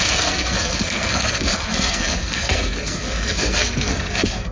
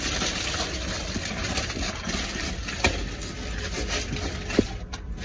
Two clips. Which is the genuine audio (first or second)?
second